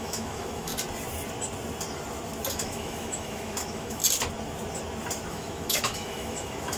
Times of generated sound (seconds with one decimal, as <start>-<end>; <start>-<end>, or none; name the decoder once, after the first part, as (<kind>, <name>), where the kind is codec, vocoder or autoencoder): 0.0-0.7 (autoencoder, DAC-VAE); 2.5-4.0; 5.3-6.8

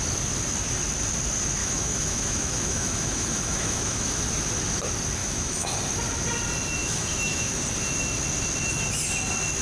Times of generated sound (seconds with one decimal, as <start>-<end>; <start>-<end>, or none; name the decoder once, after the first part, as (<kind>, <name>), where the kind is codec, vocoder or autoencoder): 1.6-4.2 (autoencoder, DAC-VAE); 5.2-5.7; 6.8-7.6

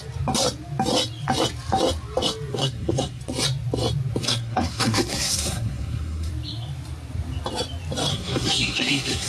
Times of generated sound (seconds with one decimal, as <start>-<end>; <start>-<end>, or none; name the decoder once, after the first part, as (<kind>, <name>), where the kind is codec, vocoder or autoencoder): 2.5-3.2 (codec, SNAC); 4.2-6.3; 8.1-9.3

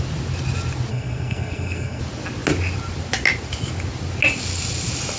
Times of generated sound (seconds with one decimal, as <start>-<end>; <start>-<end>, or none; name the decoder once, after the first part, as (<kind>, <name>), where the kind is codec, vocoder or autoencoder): 0.9-2.0 (codec, SNAC)

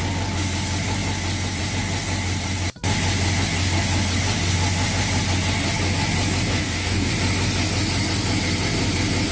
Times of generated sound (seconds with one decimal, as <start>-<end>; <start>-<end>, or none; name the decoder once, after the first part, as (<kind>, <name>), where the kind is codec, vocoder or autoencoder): 6.6-7.1 (codec, DAC)

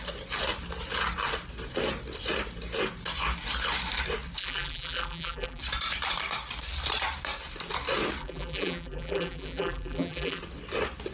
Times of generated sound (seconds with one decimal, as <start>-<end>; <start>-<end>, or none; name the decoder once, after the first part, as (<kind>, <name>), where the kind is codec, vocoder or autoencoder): 4.4-5.6 (vocoder, BigVGAN v2); 8.2-10.4

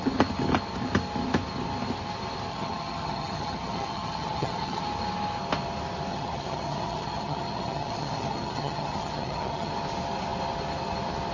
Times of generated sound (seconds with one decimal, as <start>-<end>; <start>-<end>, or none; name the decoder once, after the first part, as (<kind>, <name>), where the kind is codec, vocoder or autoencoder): 2.5-4.8 (vocoder, HiFi-GAN); 6.1-9.7

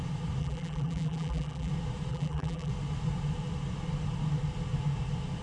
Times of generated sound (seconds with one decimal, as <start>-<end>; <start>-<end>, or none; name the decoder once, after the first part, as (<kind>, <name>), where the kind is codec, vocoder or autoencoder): 0.4-1.7 (vocoder, BigVGAN v2); 2.1-2.7